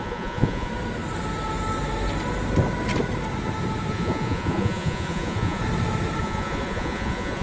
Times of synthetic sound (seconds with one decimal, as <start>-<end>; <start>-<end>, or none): 0.0-0.7; 3.9-5.6; 6.2-7.4